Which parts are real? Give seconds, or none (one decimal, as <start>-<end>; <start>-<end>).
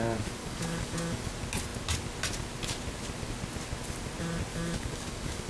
0.0-0.4; 1.2-4.5